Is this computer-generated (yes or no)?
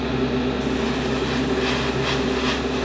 no